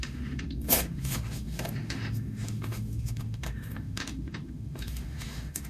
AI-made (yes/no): yes